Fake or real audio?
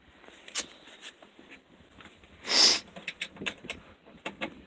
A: real